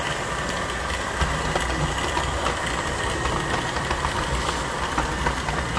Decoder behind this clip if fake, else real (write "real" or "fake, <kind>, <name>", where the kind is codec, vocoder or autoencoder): real